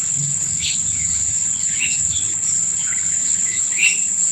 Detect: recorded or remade remade